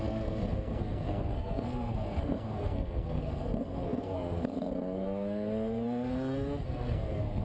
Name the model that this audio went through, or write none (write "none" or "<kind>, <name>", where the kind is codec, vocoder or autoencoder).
codec, SNAC